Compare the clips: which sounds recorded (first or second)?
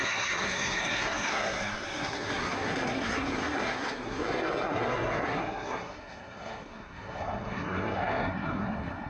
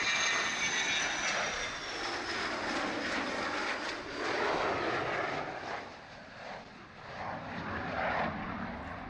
second